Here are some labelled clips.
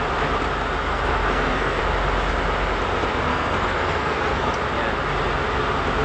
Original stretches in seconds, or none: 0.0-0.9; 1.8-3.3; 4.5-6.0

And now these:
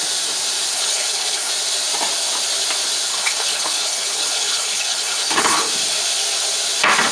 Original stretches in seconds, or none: 0.0-0.7; 1.5-3.1; 5.7-7.1

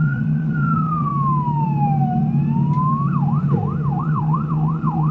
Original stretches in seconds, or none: 1.1-4.0

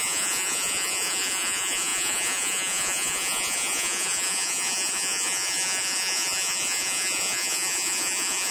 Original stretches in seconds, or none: none